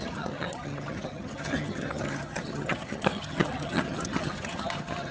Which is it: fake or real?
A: fake